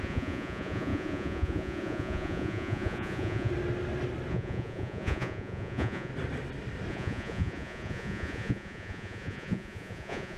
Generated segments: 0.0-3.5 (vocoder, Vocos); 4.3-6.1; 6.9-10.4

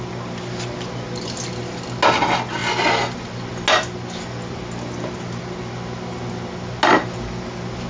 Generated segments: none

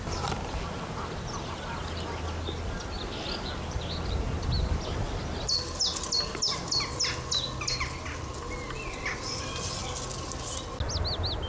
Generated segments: none